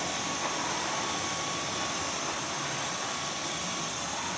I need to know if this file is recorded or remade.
recorded